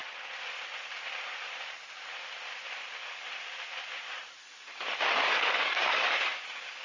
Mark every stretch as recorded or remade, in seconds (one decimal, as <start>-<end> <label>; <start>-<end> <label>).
0.0-4.4 recorded; 4.4-6.8 remade